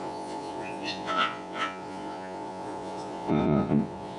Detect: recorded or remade remade